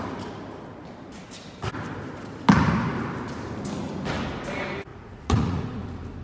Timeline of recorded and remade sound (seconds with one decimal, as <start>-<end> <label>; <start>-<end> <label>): 0.0-4.9 recorded; 4.9-5.6 remade; 5.6-6.2 recorded